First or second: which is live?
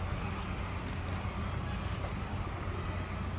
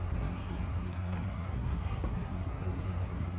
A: first